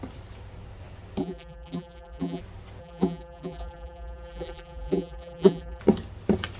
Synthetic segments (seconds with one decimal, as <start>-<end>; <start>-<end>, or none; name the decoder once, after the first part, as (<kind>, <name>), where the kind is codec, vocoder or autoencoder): 1.2-2.4 (vocoder, BigVGAN v2); 2.8-5.8